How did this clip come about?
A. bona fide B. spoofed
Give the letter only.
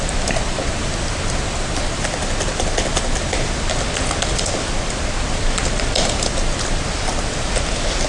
A